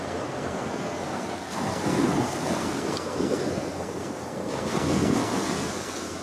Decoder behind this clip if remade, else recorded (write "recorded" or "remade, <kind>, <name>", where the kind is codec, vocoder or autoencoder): remade, codec, SNAC